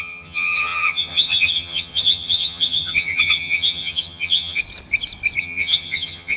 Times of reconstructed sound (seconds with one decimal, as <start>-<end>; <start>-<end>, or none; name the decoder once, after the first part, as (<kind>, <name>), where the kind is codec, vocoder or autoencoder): 0.0-4.6 (vocoder, HiFi-GAN); 5.4-6.4